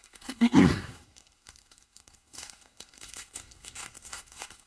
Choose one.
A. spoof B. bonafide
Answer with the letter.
A